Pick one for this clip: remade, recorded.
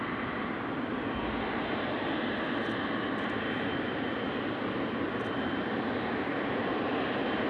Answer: recorded